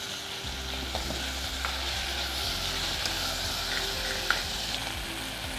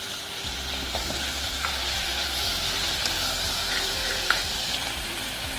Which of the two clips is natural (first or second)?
first